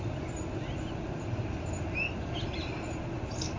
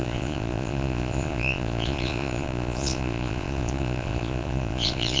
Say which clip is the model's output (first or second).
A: second